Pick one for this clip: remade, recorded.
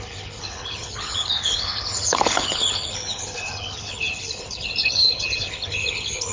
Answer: remade